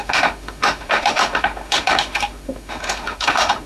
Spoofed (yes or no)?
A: yes